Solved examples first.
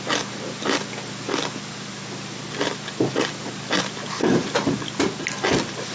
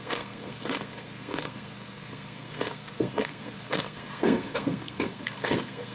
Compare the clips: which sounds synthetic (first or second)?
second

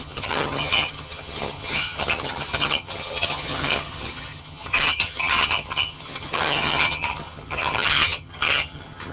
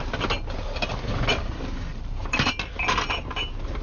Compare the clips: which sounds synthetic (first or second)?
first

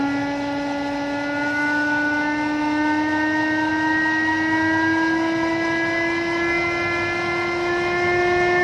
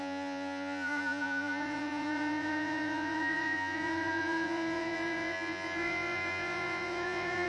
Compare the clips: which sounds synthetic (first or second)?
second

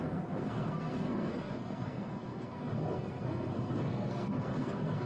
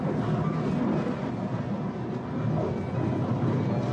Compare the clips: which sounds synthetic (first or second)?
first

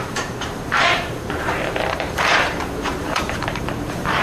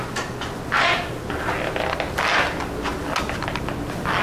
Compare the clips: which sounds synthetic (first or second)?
first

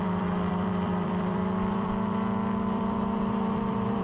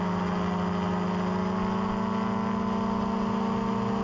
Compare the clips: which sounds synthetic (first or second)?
first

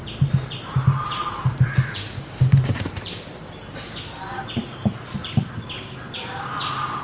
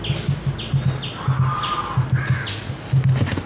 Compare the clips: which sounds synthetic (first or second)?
first